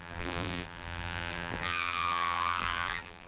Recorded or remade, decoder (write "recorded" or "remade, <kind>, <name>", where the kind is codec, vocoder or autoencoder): remade, vocoder, BigVGAN v2